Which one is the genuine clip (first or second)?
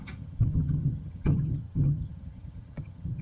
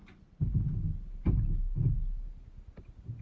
second